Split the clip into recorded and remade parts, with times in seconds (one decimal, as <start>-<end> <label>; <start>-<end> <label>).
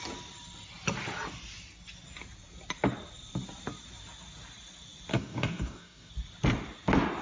0.0-5.1 recorded; 5.1-6.1 remade; 6.1-7.2 recorded